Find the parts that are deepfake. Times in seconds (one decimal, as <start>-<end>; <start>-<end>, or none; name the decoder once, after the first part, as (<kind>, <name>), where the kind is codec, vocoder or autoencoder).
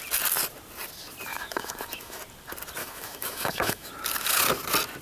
1.3-2.2 (autoencoder, DAC-VAE); 2.8-3.9